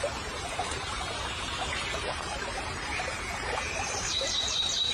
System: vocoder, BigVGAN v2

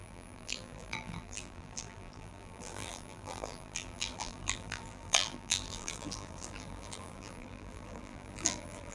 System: vocoder, BigVGAN v2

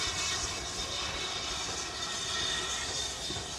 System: none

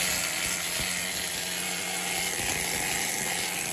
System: none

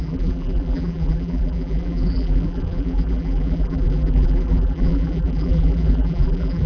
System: vocoder, BigVGAN v2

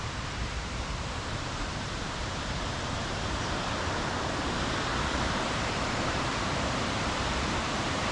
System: vocoder, BigVGAN v2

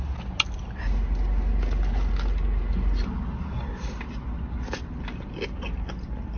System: none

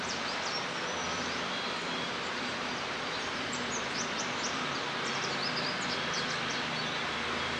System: vocoder, BigVGAN v2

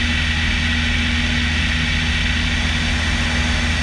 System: none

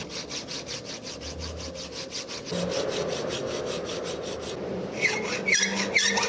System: none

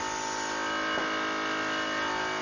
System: none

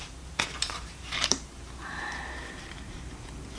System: vocoder, BigVGAN v2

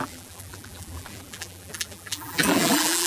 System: vocoder, BigVGAN v2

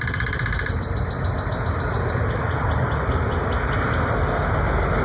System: none